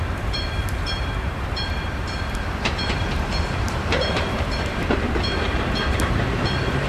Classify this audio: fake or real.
fake